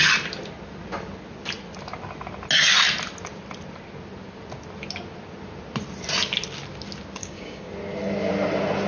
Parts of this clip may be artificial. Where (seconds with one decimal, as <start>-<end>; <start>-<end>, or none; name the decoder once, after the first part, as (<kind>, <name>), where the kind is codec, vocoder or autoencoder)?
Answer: 7.2-7.7 (codec, DAC)